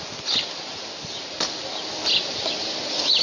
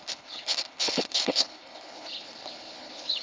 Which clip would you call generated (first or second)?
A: second